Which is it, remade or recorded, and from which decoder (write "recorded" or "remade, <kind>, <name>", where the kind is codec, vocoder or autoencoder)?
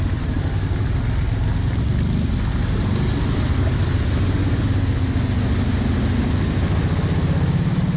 recorded